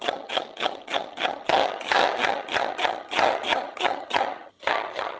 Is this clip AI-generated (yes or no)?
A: yes